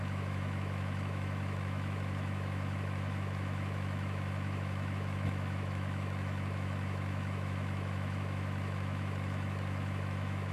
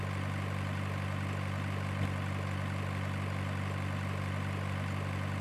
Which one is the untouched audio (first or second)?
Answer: second